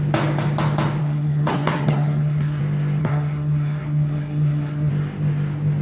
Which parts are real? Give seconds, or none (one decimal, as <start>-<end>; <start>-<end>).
0.0-1.0; 2.6-3.0; 4.9-5.8